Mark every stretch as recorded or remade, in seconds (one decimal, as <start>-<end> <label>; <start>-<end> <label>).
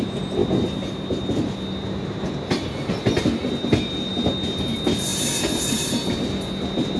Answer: 0.0-3.4 recorded; 3.4-4.1 remade; 4.1-5.1 recorded; 5.1-7.0 remade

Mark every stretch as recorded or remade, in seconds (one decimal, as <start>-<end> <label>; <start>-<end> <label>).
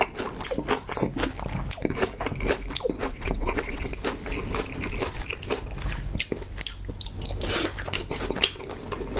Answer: 0.0-3.0 recorded; 3.0-3.9 remade; 3.9-9.2 recorded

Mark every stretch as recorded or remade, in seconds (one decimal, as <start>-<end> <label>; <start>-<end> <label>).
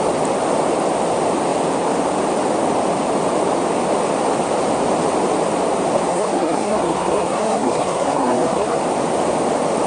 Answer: 0.0-6.1 recorded; 6.1-8.8 remade; 8.8-9.9 recorded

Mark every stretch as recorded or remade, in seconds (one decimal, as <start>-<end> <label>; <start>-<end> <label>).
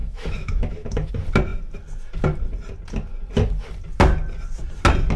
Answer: 0.0-1.1 remade; 1.1-5.2 recorded